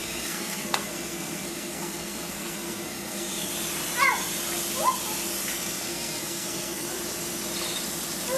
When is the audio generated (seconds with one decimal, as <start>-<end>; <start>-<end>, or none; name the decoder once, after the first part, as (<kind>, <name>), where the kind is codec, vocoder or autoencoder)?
0.0-3.5 (codec, SNAC); 5.5-6.9